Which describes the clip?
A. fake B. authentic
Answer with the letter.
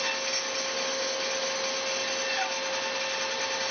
B